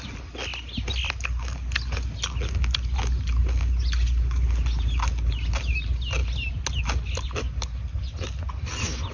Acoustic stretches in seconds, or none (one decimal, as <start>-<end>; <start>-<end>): 0.0-9.1